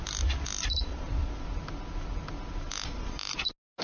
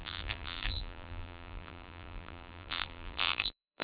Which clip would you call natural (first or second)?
first